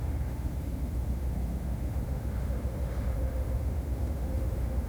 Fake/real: fake